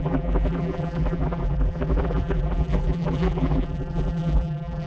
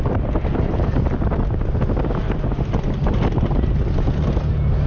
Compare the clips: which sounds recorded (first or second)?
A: second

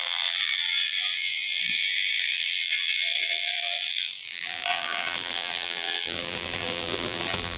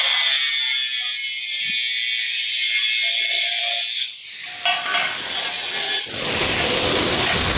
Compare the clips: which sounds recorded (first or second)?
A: second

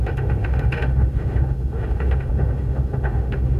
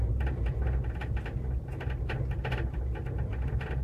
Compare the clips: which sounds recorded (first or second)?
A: second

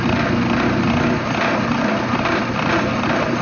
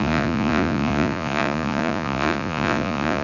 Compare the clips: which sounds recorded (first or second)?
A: first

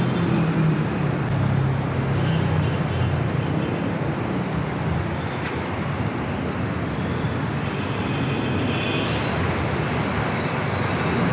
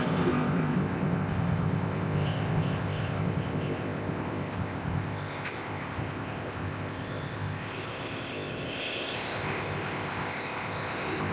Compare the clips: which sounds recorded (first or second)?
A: first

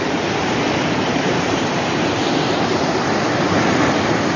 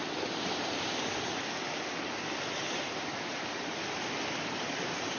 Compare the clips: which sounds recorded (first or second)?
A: second